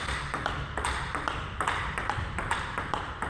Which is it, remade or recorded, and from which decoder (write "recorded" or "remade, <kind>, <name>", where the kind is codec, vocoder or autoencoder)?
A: remade, vocoder, BigVGAN v2